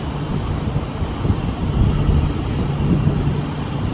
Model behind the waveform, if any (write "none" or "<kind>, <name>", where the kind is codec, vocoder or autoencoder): none